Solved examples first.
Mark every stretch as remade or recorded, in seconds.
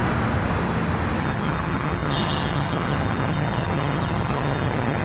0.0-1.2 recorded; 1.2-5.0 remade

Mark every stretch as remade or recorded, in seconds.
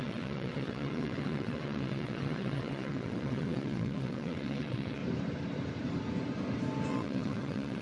0.0-5.0 remade; 5.0-6.9 recorded; 6.9-7.8 remade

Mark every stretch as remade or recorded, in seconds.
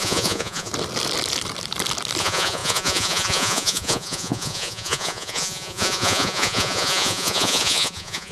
0.0-0.7 remade; 0.7-2.2 recorded; 2.2-8.3 remade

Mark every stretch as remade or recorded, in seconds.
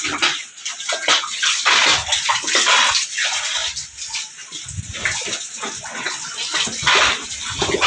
0.0-7.9 recorded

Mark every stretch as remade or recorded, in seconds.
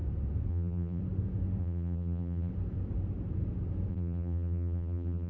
0.0-0.5 recorded; 0.5-1.0 remade; 1.0-1.6 recorded; 1.6-2.5 remade; 2.5-3.9 recorded; 3.9-5.3 remade